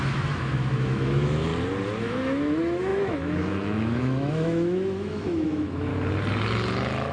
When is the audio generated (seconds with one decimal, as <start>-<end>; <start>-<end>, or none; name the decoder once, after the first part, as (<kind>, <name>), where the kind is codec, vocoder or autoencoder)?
0.0-1.5 (autoencoder, DAC-VAE); 2.0-5.9